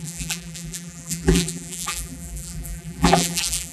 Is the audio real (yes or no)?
no